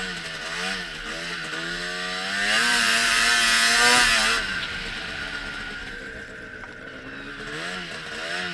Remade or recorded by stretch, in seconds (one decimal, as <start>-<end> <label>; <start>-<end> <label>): 0.0-2.7 recorded; 2.7-3.3 remade; 3.3-5.8 recorded; 5.8-7.0 remade; 7.0-8.5 recorded